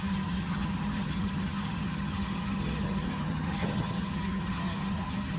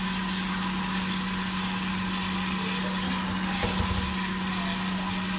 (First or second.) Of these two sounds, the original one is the second